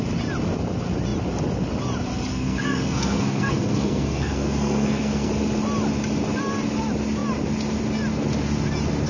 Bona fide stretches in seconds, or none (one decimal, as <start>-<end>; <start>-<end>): 0.0-2.3; 5.3-9.1